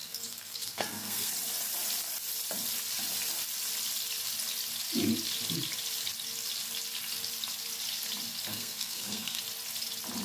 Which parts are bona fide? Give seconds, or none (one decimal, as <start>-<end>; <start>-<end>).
1.3-8.5; 9.4-10.2